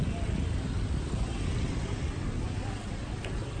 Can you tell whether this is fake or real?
real